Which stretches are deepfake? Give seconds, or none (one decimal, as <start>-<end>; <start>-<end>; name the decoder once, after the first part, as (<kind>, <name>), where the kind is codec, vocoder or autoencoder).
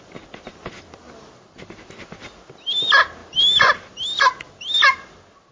none